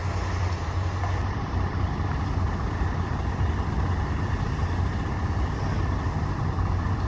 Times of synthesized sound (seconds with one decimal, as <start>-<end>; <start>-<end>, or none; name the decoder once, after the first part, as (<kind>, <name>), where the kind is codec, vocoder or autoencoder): none